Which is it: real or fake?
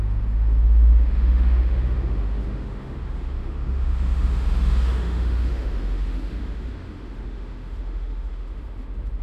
fake